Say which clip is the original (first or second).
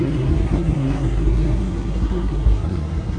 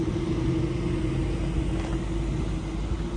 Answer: second